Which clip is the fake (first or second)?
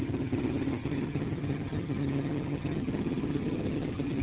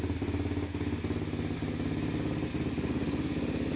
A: first